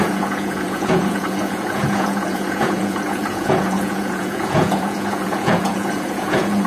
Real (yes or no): no